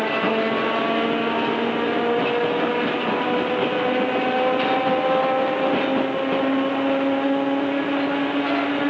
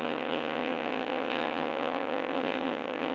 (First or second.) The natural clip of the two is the first